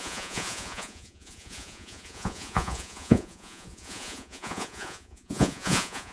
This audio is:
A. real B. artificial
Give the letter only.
B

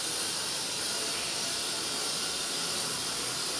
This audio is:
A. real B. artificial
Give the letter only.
A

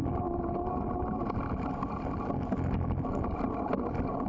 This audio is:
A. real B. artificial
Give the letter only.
A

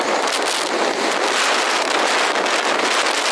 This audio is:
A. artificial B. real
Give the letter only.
B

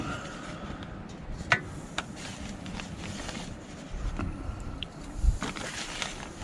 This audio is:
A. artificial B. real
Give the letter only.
A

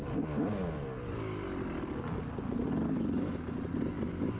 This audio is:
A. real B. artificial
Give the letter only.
A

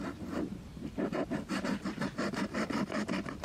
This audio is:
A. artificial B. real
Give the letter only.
A